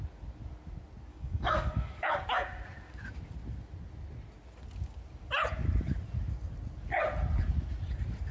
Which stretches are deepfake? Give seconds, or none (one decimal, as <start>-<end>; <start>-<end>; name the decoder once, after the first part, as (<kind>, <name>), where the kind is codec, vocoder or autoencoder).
1.1-2.2 (codec, DAC)